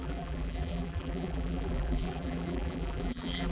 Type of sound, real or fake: fake